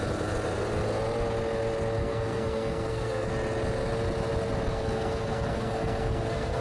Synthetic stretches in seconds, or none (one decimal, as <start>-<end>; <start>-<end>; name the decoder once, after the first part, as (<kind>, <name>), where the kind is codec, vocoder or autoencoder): 2.0-3.3 (codec, SNAC); 4.7-6.6